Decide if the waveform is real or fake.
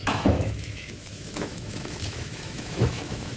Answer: fake